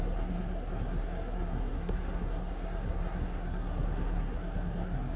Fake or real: fake